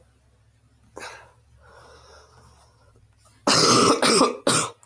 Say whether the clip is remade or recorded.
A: recorded